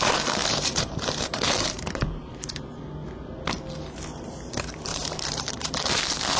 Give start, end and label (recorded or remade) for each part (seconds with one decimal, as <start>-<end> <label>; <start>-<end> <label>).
0.0-0.4 recorded; 0.4-2.6 remade; 2.6-4.9 recorded; 4.9-6.0 remade; 6.0-6.4 recorded